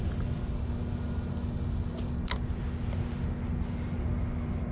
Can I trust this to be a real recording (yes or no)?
yes